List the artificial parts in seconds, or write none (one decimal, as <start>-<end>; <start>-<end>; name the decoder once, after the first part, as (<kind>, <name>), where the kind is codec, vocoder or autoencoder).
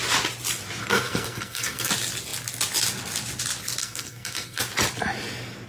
0.8-1.9 (codec, SNAC); 3.8-4.6